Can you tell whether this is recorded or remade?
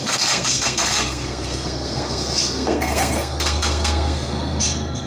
remade